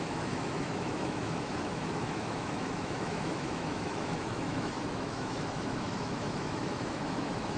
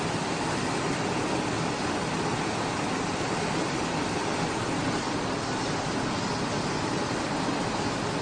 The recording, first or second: second